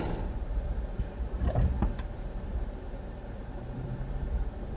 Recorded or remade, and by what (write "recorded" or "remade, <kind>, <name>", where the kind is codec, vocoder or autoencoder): remade, vocoder, BigVGAN v2